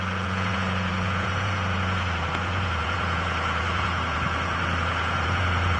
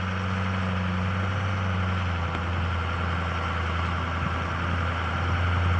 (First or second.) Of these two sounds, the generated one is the first